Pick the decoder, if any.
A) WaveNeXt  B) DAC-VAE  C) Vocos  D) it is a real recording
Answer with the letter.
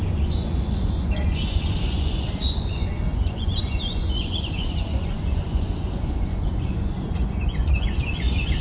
C